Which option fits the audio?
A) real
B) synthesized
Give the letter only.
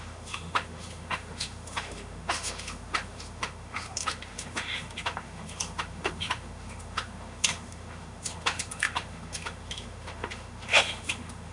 B